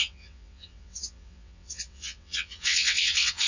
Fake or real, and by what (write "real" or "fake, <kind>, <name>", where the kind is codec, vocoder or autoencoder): fake, vocoder, WaveNeXt